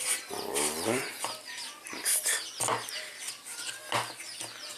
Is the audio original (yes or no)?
yes